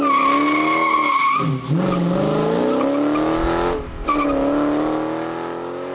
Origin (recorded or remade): recorded